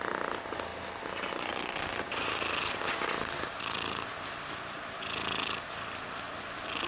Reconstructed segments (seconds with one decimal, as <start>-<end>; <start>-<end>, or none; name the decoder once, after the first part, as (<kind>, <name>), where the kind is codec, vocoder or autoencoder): none